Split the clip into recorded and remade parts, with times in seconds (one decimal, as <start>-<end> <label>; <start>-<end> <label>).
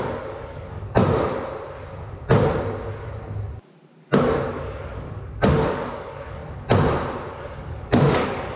0.0-1.0 remade; 1.0-4.5 recorded; 4.5-6.4 remade; 6.4-7.3 recorded; 7.3-8.6 remade